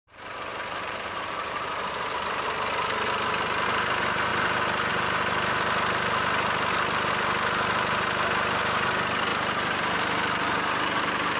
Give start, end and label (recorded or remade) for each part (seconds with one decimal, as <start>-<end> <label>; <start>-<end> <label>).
0.0-0.5 recorded; 0.5-1.9 remade; 1.9-9.3 recorded; 9.3-9.8 remade; 9.8-11.4 recorded